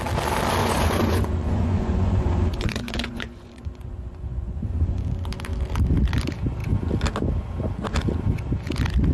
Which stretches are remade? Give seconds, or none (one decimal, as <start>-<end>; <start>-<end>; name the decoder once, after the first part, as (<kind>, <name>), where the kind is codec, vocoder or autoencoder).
0.6-5.0 (vocoder, Vocos)